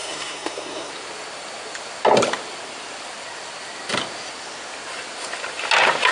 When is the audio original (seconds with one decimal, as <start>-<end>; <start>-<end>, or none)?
0.9-6.1